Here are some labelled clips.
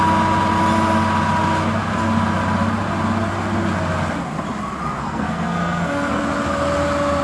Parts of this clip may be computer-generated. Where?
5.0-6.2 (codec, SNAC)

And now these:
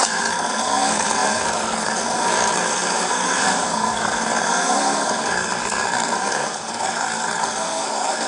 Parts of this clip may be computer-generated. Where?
0.0-8.3 (codec, SNAC)

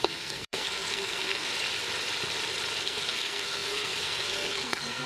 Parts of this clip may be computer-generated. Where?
0.0-1.5 (codec, SNAC); 2.8-5.1

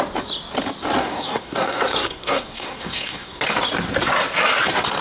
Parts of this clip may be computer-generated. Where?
1.0-3.4 (codec, SNAC)

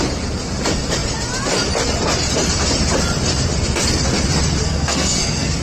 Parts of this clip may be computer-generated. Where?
4.6-5.6 (codec, SNAC)

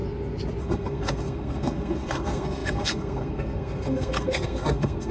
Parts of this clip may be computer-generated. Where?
0.6-5.1 (codec, SNAC)

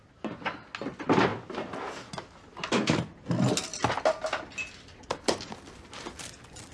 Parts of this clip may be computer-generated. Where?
none

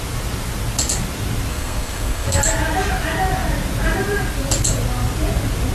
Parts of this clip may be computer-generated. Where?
1.5-2.4 (codec, SNAC)